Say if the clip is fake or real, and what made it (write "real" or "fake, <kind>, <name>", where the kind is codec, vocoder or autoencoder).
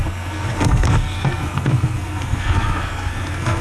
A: fake, codec, SNAC